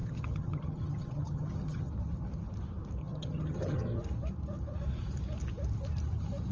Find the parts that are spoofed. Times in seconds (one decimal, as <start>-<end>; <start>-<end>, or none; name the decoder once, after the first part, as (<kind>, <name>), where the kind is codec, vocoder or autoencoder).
0.0-1.9 (vocoder, HiFi-GAN); 3.0-3.8